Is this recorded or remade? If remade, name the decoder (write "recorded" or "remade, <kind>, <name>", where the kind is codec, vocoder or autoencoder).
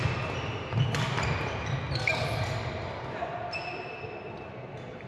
recorded